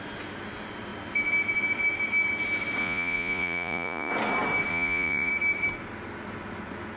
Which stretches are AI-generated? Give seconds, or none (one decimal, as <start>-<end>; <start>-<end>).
2.8-4.1; 4.7-5.3

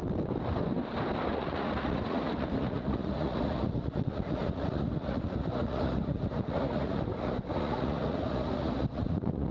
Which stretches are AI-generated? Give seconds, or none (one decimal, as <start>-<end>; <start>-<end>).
1.3-9.5